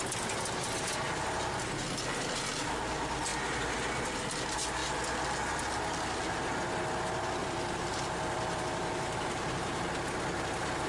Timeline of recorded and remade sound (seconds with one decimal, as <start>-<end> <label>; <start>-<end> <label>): 0.0-3.3 recorded; 3.3-3.8 remade; 3.8-7.4 recorded; 7.4-9.8 remade; 9.8-10.9 recorded